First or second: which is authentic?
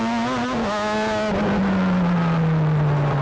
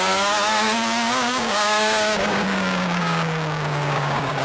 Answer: first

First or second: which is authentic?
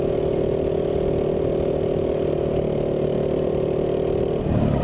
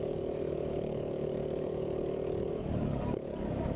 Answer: first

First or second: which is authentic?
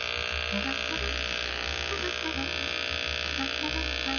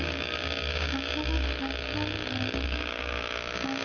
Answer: first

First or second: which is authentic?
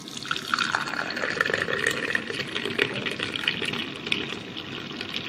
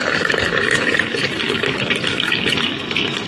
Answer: first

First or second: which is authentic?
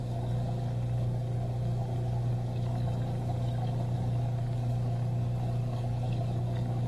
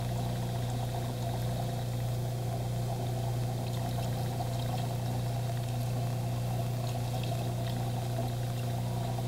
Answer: second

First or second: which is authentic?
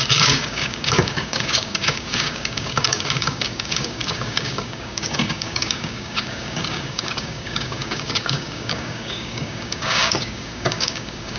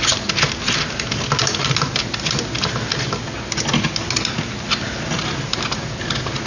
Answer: second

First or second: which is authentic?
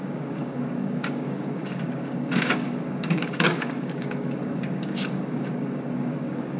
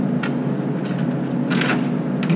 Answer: second